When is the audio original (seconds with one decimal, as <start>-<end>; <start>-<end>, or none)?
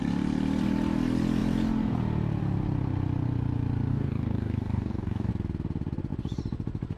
0.0-3.9; 5.3-7.0